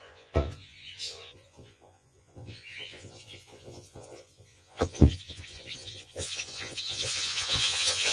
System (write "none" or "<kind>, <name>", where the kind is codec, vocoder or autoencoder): vocoder, Vocos